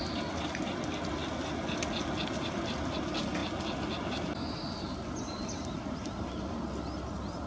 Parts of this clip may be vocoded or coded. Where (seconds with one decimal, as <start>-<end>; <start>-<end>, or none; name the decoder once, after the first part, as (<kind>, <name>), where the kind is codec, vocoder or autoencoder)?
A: none

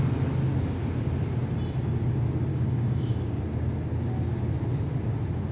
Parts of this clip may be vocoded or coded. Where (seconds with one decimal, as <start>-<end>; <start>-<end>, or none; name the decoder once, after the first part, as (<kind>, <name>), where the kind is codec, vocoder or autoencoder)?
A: 2.5-3.4 (codec, DAC)

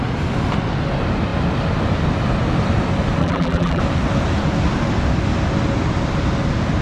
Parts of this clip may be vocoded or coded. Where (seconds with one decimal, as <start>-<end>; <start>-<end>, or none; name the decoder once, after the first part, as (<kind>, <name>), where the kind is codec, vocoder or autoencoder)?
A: 3.2-3.8 (vocoder, BigVGAN v2)